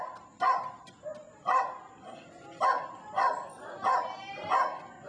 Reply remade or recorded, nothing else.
recorded